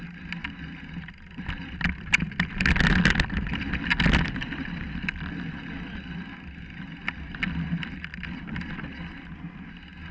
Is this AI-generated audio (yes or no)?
no